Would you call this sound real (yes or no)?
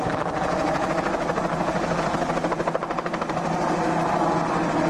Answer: yes